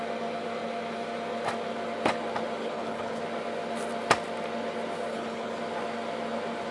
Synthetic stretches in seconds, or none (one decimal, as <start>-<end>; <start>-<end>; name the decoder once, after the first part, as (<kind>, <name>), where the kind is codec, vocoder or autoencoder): 2.6-3.2 (codec, HILCodec); 5.1-5.6